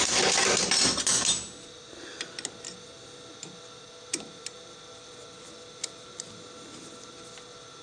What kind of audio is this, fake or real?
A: real